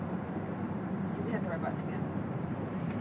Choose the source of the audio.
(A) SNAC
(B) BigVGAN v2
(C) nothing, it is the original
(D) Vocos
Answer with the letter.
B